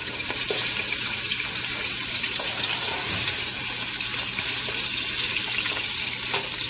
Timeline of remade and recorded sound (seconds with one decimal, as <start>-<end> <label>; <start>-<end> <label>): 0.0-3.6 remade; 3.6-6.7 recorded